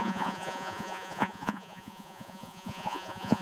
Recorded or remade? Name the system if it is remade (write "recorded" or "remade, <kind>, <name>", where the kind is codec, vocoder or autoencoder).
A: remade, vocoder, Vocos